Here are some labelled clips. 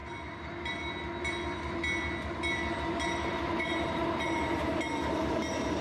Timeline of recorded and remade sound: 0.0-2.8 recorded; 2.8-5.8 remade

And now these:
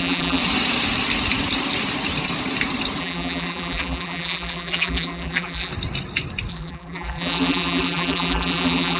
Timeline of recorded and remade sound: 0.0-0.4 remade; 0.4-3.0 recorded; 3.0-5.7 remade; 5.7-6.5 recorded; 6.5-9.0 remade

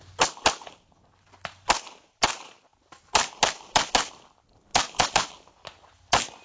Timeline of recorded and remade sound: 0.0-4.7 recorded; 4.7-5.3 remade; 5.3-6.4 recorded

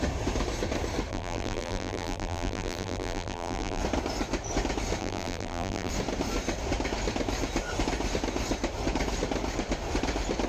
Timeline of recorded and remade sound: 0.0-1.1 recorded; 1.1-3.8 remade; 3.8-5.0 recorded; 5.0-5.9 remade; 5.9-10.5 recorded

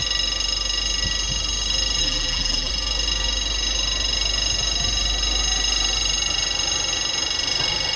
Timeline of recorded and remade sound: 0.0-2.0 recorded; 2.0-2.7 remade; 2.7-8.0 recorded

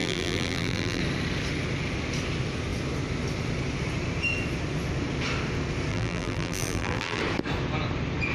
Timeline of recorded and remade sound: 0.0-1.0 remade; 1.0-5.9 recorded; 5.9-7.2 remade; 7.2-8.3 recorded

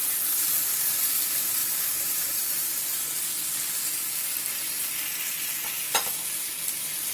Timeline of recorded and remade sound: 0.0-1.6 recorded; 1.6-2.8 remade; 2.8-7.1 recorded